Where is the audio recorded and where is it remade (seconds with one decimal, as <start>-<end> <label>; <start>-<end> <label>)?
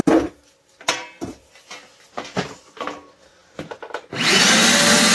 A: 0.0-5.1 recorded